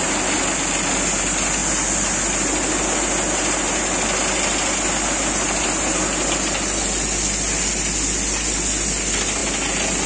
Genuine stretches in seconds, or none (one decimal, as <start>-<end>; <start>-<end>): 0.0-10.1